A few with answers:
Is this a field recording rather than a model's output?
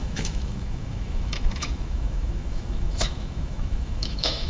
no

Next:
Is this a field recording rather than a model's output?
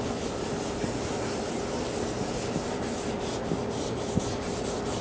yes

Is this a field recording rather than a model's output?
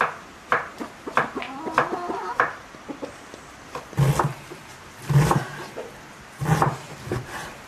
yes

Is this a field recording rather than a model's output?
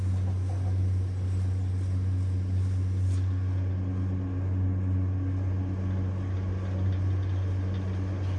yes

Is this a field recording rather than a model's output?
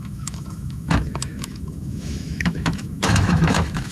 no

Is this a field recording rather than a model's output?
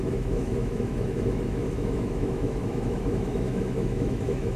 no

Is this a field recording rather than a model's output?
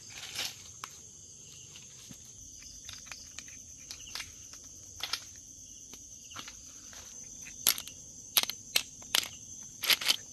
yes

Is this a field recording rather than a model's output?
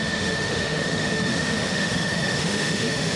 no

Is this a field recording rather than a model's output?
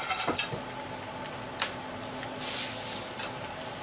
yes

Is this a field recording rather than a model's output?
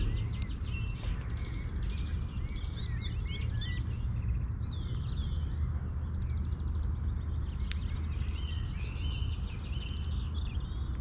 yes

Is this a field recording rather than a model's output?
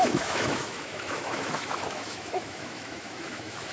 no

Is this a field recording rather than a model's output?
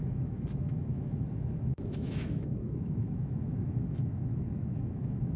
no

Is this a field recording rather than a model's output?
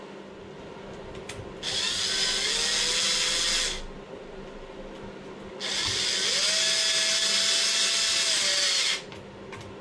yes